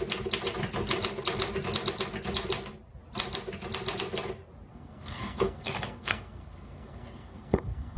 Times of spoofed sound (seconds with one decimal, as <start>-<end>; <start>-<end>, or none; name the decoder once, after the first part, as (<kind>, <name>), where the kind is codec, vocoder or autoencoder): 4.7-8.0 (codec, SNAC)